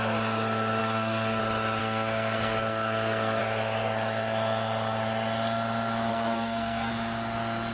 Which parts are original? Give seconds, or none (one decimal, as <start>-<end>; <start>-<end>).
0.0-0.8; 1.4-1.8; 3.4-6.1; 6.9-7.7